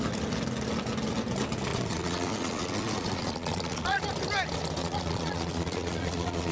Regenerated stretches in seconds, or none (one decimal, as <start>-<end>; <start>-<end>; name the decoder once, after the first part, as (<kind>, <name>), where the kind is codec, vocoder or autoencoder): 1.7-4.0 (vocoder, Vocos); 4.8-6.5